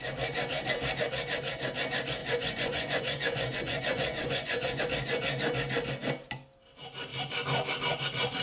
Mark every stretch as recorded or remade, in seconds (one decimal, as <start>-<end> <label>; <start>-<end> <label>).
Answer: 0.0-2.2 recorded; 2.2-4.8 remade; 4.8-8.4 recorded